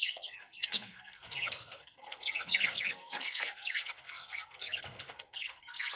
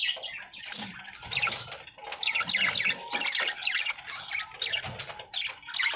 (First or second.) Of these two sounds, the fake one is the first